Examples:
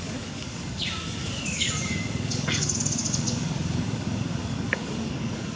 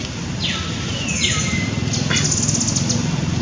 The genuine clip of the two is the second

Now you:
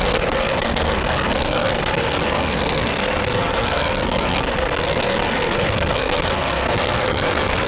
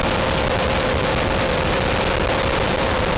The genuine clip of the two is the second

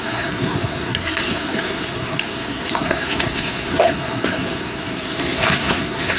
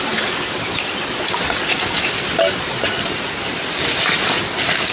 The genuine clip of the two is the second